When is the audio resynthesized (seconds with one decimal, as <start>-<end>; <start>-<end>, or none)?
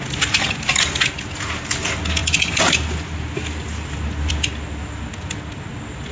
none